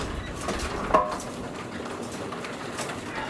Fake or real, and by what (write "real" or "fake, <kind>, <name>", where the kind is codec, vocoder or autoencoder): real